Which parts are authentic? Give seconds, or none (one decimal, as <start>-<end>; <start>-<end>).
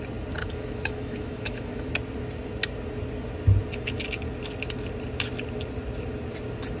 0.0-0.4; 1.9-6.8